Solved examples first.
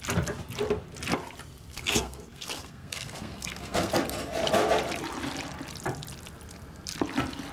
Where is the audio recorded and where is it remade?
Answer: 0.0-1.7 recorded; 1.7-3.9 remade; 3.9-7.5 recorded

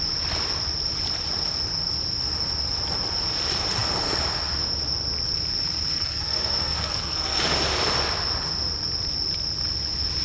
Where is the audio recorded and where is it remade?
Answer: 0.0-6.0 recorded; 6.0-7.4 remade; 7.4-10.2 recorded

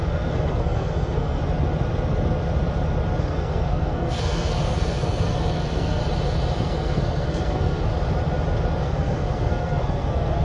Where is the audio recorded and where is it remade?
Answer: 0.0-1.4 remade; 1.4-3.2 recorded; 3.2-6.0 remade; 6.0-6.6 recorded; 6.6-7.9 remade; 7.9-8.8 recorded; 8.8-10.4 remade